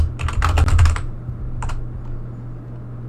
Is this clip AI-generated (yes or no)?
no